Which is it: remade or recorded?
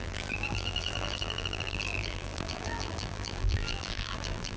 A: remade